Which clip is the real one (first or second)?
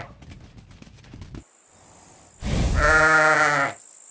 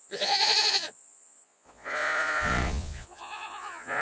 first